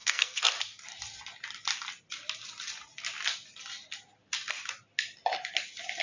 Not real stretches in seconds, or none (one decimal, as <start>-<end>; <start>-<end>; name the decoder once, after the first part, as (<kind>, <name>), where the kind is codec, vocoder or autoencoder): 0.0-0.5 (codec, SNAC)

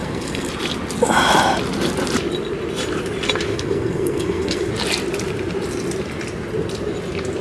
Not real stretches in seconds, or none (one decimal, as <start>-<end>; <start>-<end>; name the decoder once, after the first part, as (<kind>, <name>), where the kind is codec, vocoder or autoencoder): 0.0-0.5 (codec, SNAC); 3.5-4.7